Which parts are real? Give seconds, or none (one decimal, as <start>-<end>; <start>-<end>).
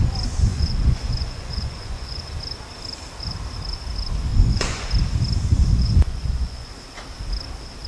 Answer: 0.0-0.5; 2.2-4.3; 4.9-5.5; 6.7-7.9